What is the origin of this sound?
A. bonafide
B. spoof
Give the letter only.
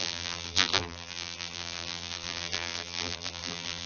B